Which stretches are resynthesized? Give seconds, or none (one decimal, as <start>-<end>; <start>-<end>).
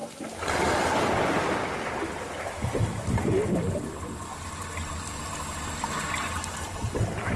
1.5-3.6; 6.8-7.4